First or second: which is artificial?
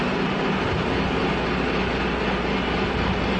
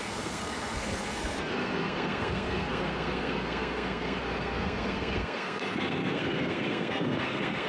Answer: second